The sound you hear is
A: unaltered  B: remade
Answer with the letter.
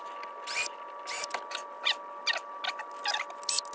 A